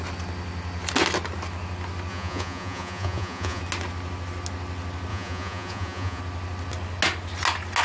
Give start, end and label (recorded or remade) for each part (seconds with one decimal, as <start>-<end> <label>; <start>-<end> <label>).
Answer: 0.0-2.1 recorded; 2.1-3.6 remade; 3.6-5.1 recorded; 5.1-6.2 remade; 6.2-7.8 recorded